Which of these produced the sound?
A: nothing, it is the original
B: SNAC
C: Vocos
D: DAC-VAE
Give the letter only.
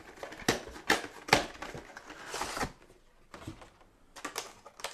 A